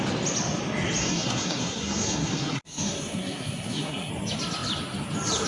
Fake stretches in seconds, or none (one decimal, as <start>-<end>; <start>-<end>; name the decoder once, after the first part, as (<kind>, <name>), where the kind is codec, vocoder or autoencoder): 1.0-4.1 (codec, SNAC)